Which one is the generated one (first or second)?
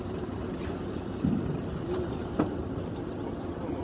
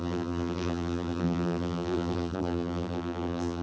second